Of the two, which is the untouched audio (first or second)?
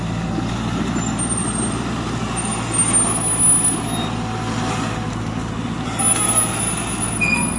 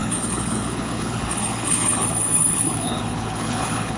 first